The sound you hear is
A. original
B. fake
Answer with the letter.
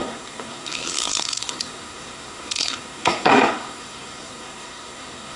B